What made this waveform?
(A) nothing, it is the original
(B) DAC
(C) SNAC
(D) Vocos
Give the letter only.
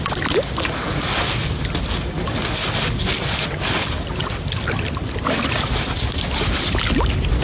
A